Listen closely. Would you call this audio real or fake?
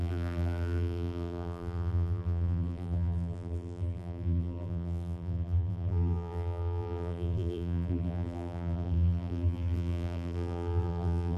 fake